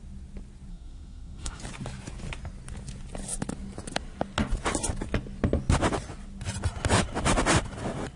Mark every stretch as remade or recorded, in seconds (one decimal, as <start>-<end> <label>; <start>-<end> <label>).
0.0-0.7 recorded; 0.7-1.6 remade; 1.6-8.2 recorded